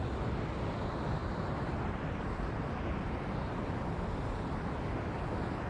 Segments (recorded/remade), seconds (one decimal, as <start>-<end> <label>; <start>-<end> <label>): 0.0-1.2 recorded; 1.2-4.6 remade; 4.6-5.7 recorded